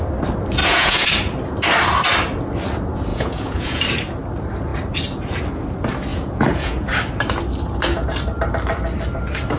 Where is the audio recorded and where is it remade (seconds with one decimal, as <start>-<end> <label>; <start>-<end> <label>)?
0.0-0.6 recorded; 0.6-1.1 remade; 1.1-3.1 recorded; 3.1-3.8 remade; 3.8-6.1 recorded; 6.1-6.9 remade; 6.9-9.6 recorded